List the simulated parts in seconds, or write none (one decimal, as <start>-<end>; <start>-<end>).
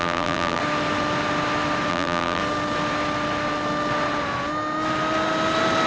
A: 0.0-0.6; 1.9-2.4